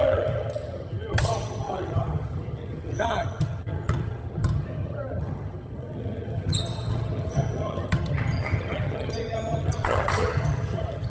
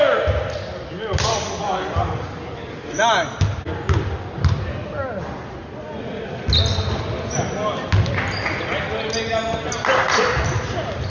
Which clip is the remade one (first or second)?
first